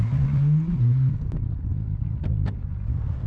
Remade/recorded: recorded